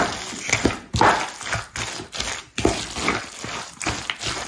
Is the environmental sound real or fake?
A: real